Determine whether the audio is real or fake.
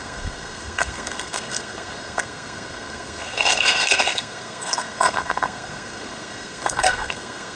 fake